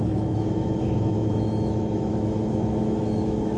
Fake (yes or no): yes